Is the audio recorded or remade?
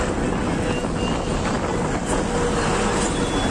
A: recorded